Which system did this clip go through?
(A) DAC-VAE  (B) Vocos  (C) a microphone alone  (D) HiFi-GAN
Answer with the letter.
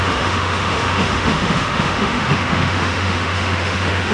A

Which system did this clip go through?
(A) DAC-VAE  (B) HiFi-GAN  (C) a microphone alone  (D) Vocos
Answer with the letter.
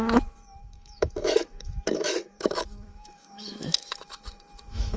A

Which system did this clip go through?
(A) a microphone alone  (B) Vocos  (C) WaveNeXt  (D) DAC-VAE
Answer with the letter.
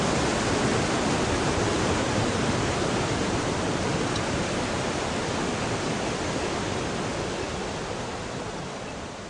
A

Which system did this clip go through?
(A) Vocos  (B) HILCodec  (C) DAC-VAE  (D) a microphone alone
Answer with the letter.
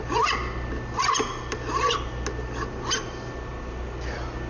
D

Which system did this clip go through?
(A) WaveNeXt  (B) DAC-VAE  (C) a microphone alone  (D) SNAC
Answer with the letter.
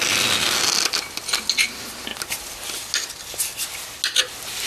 C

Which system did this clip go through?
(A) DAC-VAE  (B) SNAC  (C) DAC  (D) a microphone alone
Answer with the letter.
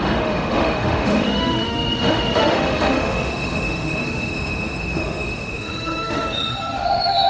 A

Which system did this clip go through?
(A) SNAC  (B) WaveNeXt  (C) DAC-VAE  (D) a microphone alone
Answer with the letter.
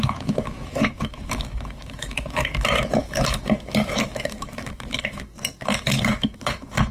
C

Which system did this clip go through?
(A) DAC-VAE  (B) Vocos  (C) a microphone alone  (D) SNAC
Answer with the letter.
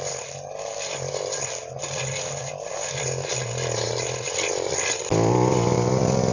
C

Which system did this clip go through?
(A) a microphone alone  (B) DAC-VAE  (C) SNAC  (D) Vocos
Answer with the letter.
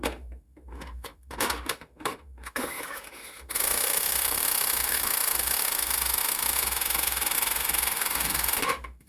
B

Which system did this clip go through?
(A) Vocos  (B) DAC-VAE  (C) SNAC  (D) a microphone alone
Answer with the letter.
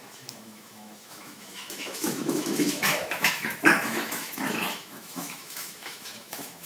B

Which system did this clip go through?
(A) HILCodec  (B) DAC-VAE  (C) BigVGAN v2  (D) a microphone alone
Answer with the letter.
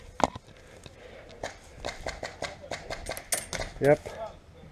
D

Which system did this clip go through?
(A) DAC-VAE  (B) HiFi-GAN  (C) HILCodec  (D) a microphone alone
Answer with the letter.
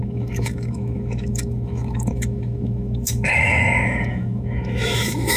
A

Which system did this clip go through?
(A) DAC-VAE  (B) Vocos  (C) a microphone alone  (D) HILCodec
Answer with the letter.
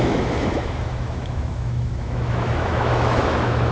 A